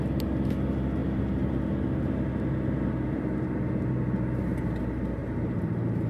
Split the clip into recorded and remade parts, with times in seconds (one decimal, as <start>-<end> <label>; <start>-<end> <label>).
0.0-1.0 recorded; 1.0-1.6 remade; 1.6-5.2 recorded; 5.2-6.1 remade

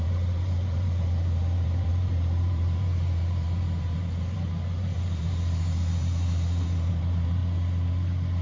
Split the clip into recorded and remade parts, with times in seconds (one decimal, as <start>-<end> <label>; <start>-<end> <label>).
0.0-7.4 remade; 7.4-8.4 recorded

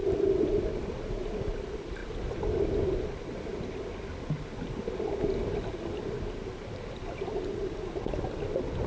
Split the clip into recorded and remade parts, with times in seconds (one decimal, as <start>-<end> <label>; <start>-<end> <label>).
0.0-0.8 remade; 0.8-2.0 recorded; 2.0-3.1 remade; 3.1-8.9 recorded

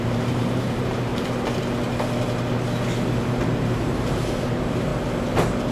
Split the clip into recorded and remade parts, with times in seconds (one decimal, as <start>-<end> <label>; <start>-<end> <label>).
0.0-1.1 remade; 1.1-3.2 recorded; 3.2-4.9 remade; 4.9-5.7 recorded

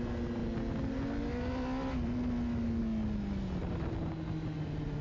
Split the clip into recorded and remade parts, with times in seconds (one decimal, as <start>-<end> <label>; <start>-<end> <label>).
0.0-5.0 recorded

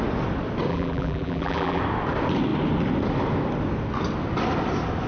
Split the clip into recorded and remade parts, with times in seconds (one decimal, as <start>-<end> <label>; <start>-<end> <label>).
0.0-0.7 recorded; 0.7-1.8 remade; 1.8-5.1 recorded

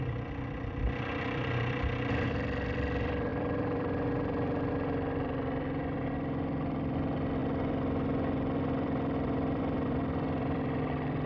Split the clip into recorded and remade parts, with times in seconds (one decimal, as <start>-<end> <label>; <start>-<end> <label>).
0.0-11.3 remade